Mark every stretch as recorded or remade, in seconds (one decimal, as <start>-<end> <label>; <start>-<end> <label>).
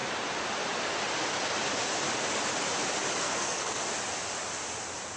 0.0-3.2 recorded; 3.2-3.8 remade; 3.8-5.2 recorded